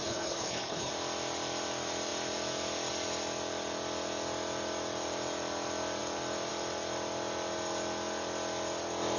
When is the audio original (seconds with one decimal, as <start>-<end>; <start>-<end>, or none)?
0.9-9.2